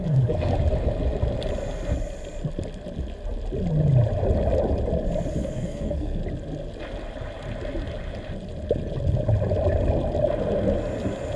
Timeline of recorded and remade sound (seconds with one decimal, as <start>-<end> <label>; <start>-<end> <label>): 0.0-0.5 remade; 0.5-5.3 recorded; 5.3-6.2 remade; 6.2-11.4 recorded